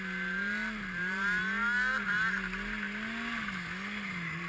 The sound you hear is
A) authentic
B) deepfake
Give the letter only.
A